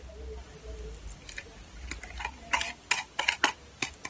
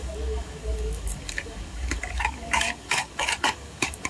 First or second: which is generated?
second